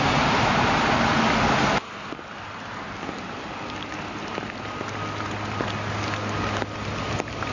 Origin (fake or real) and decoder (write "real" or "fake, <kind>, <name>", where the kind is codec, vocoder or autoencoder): real